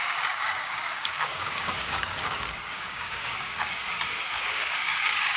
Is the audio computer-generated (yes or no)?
yes